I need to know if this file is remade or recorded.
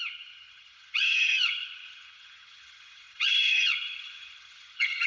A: remade